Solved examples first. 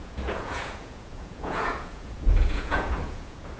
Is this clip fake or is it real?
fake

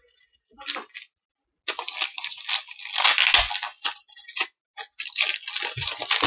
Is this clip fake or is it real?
real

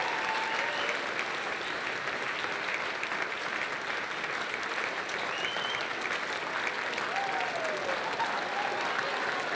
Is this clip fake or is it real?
real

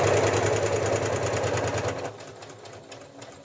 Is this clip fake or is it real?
real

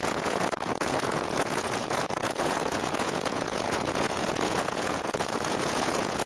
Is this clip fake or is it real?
fake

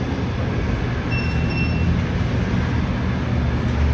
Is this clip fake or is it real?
real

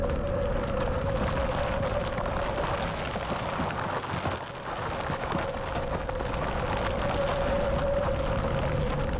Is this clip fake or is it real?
real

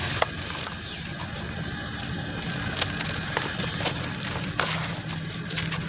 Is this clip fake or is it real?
real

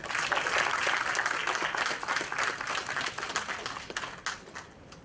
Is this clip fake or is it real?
real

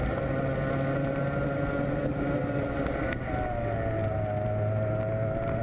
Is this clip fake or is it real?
real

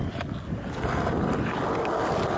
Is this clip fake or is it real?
real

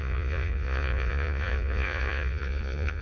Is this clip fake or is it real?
fake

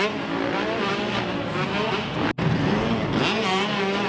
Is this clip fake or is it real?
real